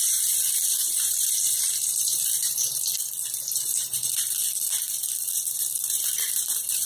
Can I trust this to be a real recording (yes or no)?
no